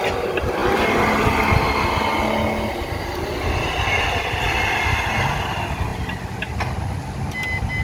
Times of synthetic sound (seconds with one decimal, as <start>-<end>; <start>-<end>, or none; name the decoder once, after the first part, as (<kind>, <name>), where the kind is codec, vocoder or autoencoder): none